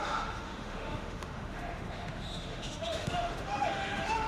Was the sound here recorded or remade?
remade